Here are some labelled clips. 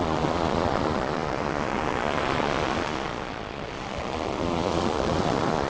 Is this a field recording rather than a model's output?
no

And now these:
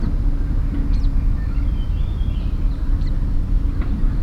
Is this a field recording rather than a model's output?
yes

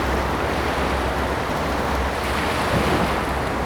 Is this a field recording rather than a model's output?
yes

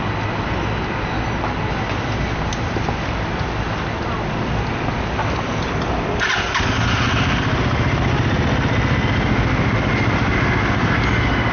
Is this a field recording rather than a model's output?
yes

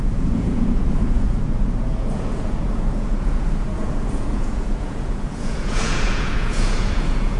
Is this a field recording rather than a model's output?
no